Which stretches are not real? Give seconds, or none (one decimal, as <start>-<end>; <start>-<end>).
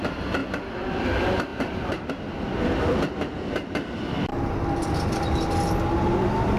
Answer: 1.5-2.1